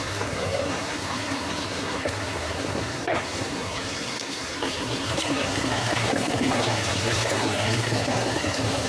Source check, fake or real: fake